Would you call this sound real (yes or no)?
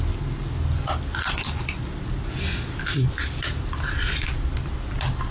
yes